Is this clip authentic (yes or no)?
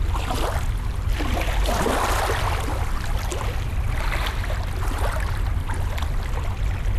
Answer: yes